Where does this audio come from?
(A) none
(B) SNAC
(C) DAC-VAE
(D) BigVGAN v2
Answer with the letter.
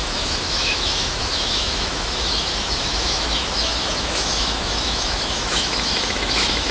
C